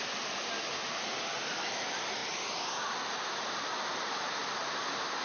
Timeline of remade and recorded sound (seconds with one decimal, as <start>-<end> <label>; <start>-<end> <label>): 0.0-5.2 recorded